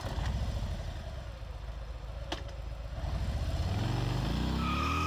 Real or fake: real